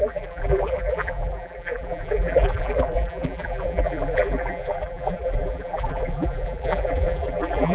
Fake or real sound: fake